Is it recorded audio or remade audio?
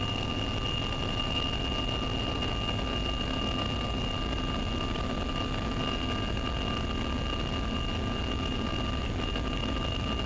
recorded